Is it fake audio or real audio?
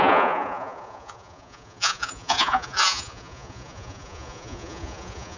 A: fake